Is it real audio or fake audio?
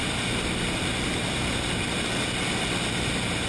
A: real